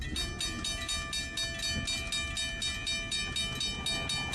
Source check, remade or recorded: recorded